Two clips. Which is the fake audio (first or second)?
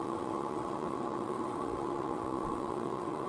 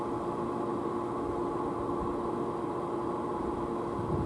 first